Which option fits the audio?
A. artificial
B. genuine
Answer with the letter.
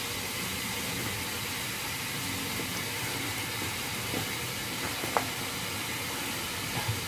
B